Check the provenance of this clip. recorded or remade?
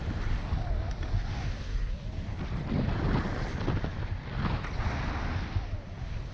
recorded